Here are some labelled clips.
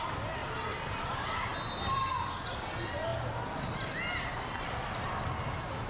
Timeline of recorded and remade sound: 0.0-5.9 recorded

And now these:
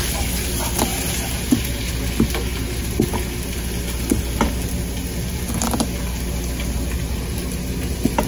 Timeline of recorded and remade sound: 0.0-0.9 recorded; 0.9-1.9 remade; 1.9-8.3 recorded

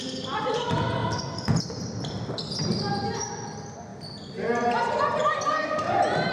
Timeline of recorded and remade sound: 0.0-1.0 recorded; 1.0-2.3 remade; 2.3-6.3 recorded

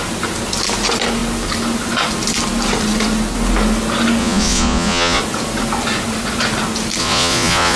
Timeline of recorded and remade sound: 0.0-4.2 recorded; 4.2-5.2 remade; 5.2-7.0 recorded; 7.0-7.8 remade

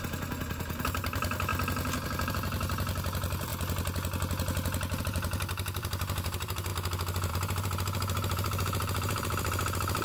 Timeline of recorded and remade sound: 0.0-1.5 remade; 1.5-2.3 recorded; 2.3-3.5 remade; 3.5-5.0 recorded; 5.0-6.7 remade; 6.7-7.3 recorded; 7.3-10.0 remade

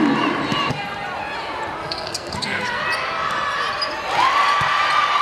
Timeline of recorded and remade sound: 0.0-1.8 recorded; 1.8-2.8 remade; 2.8-5.2 recorded

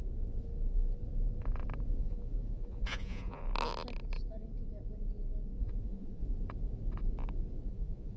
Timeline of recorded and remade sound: 0.0-2.0 recorded; 2.0-3.4 remade; 3.4-5.6 recorded; 5.6-6.2 remade; 6.2-7.7 recorded; 7.7-8.2 remade